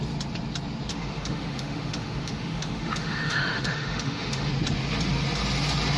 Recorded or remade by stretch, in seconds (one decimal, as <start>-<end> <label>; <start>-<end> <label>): 0.0-0.9 recorded; 0.9-4.5 remade; 4.5-6.0 recorded